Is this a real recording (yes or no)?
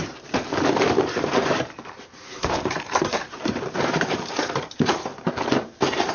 no